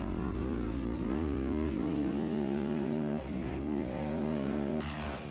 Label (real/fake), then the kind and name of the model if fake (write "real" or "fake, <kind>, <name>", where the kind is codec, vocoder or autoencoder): fake, vocoder, Vocos